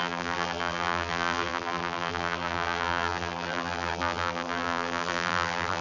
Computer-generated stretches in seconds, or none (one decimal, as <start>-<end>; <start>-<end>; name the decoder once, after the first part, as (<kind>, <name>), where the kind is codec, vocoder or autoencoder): 0.0-5.8 (vocoder, BigVGAN v2)